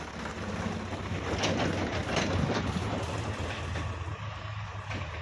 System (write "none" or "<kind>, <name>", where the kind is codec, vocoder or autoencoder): none